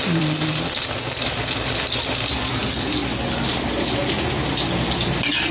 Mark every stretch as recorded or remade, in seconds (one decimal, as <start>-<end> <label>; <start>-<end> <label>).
0.0-2.6 remade; 2.6-3.5 recorded; 3.5-4.0 remade; 4.0-5.5 recorded